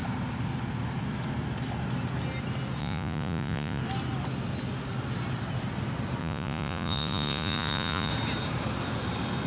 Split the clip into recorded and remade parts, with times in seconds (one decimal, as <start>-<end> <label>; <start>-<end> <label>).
0.0-2.8 recorded; 2.8-3.8 remade; 3.8-6.2 recorded; 6.2-8.1 remade; 8.1-9.5 recorded